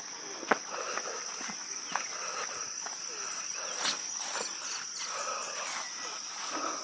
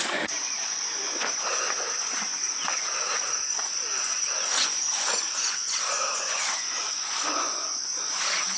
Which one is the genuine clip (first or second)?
first